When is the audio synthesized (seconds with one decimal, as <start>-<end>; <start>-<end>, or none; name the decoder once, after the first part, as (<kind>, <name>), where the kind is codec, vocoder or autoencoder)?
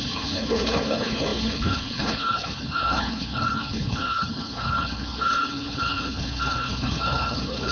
0.0-7.7 (codec, HILCodec)